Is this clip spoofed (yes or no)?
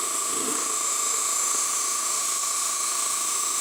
yes